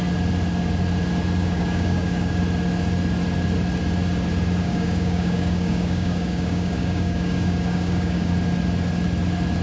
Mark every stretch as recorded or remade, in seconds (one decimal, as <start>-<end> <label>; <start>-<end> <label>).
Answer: 0.0-1.4 recorded; 1.4-2.4 remade; 2.4-4.6 recorded; 4.6-8.3 remade; 8.3-9.6 recorded